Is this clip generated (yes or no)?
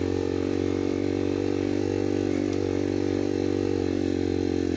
no